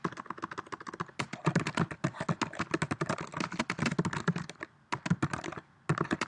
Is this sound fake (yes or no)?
no